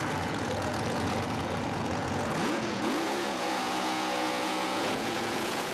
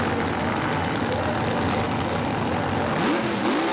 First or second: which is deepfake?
first